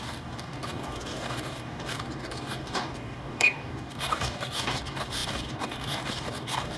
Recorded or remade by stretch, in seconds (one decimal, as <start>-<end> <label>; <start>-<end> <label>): 0.0-6.8 remade